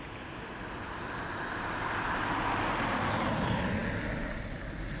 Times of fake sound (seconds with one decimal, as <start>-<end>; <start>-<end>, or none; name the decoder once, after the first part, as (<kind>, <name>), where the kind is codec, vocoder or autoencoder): none